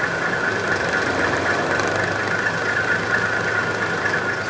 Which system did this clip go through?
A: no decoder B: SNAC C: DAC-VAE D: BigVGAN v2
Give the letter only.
A